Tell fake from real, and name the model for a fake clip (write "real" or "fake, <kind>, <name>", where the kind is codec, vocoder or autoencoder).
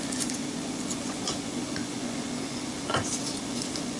fake, vocoder, Vocos